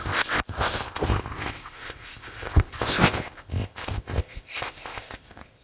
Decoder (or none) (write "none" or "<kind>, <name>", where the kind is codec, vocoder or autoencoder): codec, ZipCodec